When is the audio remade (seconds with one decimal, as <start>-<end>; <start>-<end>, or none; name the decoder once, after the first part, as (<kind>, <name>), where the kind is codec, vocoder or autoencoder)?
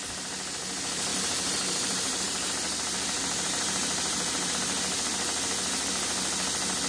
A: 1.1-4.5 (vocoder, BigVGAN v2)